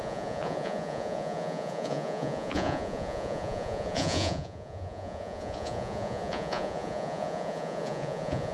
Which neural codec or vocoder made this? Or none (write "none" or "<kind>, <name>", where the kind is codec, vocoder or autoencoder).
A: vocoder, Vocos